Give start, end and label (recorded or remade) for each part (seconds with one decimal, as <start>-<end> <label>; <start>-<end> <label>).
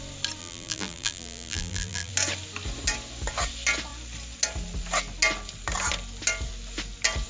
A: 0.0-0.4 recorded; 0.4-2.1 remade; 2.1-7.3 recorded